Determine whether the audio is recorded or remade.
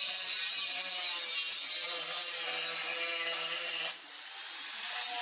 recorded